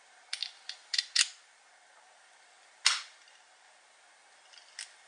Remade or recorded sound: recorded